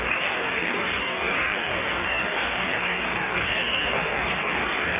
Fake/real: fake